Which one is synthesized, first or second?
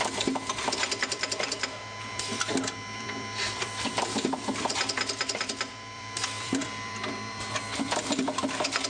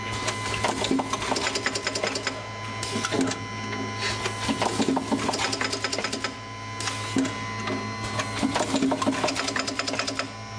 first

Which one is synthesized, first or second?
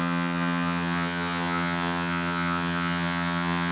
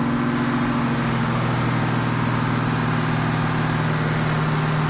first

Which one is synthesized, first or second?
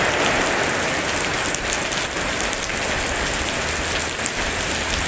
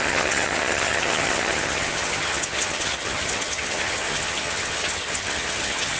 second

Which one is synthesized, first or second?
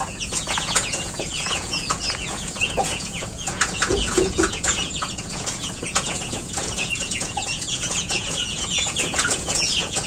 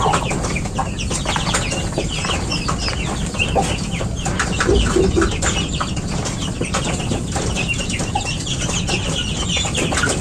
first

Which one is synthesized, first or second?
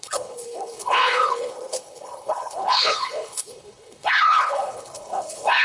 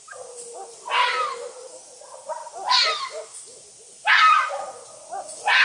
first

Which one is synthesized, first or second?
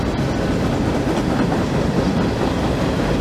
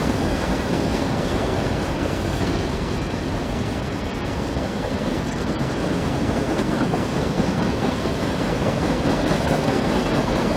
second